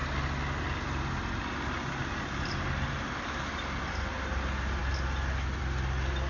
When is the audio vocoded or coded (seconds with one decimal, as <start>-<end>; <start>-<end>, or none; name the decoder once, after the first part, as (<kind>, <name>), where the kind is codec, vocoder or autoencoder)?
none